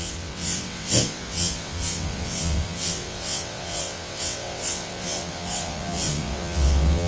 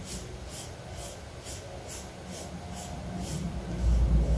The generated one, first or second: first